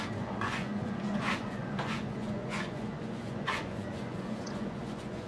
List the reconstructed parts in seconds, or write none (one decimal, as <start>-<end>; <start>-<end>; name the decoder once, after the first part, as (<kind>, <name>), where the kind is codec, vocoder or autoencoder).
0.0-5.3 (vocoder, Vocos)